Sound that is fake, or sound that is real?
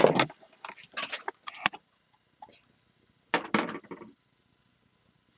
real